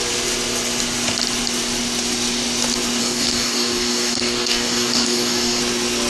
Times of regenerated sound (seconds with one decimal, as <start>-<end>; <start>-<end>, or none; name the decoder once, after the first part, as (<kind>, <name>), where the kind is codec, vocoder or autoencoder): 3.0-5.6 (codec, DAC)